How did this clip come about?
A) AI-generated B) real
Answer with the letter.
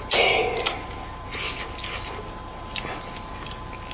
B